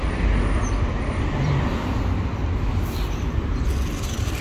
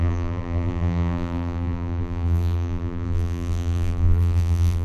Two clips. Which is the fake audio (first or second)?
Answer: second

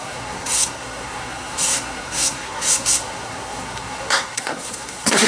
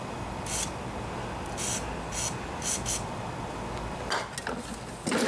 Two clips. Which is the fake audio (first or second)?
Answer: first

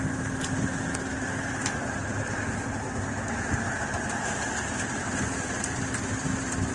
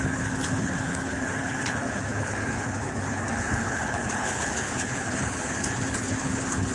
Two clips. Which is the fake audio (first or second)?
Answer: second